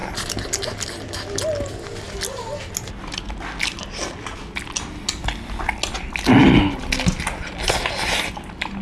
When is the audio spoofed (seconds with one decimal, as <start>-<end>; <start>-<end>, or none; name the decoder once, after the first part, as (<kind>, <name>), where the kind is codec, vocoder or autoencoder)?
none